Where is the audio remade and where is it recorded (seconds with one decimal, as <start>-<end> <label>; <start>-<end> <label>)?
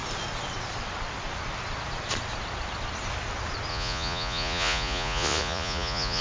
0.0-3.7 recorded; 3.7-6.2 remade